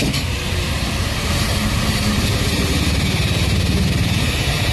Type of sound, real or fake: fake